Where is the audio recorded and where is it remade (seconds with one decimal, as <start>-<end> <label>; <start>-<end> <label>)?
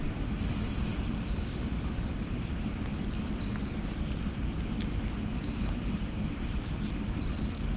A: 0.0-1.5 recorded; 1.5-2.1 remade; 2.1-7.8 recorded